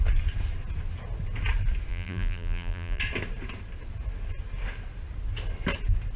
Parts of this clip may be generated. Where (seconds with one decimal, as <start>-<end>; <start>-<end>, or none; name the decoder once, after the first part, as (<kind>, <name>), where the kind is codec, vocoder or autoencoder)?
1.9-3.0 (vocoder, BigVGAN v2)